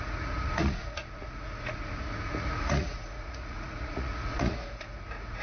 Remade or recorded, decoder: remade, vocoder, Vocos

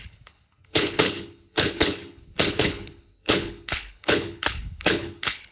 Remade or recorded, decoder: remade, codec, HILCodec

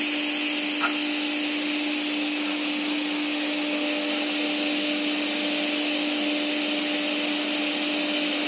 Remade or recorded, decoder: recorded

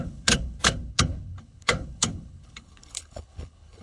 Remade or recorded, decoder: remade, codec, HILCodec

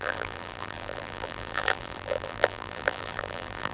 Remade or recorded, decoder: remade, vocoder, BigVGAN v2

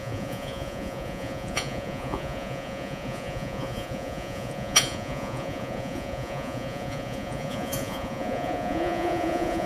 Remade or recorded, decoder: remade, vocoder, Vocos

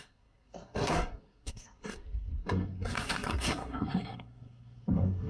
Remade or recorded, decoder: remade, codec, SNAC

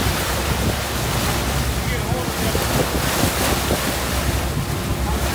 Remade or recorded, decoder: recorded